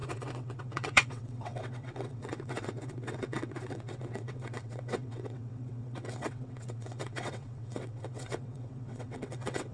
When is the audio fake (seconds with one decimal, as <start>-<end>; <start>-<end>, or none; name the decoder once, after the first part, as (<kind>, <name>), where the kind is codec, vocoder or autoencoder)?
0.0-9.7 (vocoder, WaveNeXt)

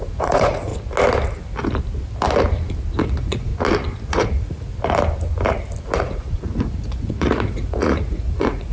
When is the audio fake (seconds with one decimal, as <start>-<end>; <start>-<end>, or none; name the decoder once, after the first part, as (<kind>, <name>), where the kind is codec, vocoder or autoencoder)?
0.0-0.7 (vocoder, Vocos); 3.0-3.5; 4.1-4.7; 6.0-8.7

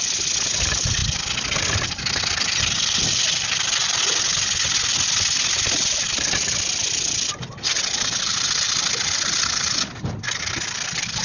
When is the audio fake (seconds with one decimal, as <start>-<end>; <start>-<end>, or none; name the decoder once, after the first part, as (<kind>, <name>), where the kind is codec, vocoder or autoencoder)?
none

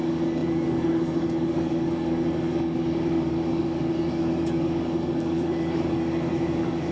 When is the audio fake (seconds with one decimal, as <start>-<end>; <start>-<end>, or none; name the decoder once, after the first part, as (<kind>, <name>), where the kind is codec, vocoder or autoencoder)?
0.0-6.9 (codec, DAC)

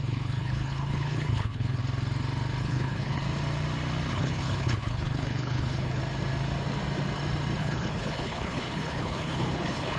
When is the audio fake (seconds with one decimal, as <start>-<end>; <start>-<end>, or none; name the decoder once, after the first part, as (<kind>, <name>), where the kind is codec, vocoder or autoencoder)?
0.0-1.8 (codec, HILCodec); 2.6-3.2; 4.1-6.0; 7.6-10.0

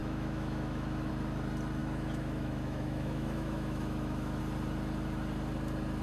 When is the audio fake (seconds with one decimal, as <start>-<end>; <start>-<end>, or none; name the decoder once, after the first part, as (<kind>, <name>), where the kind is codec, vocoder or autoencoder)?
0.0-1.1 (autoencoder, DAC-VAE); 1.8-4.4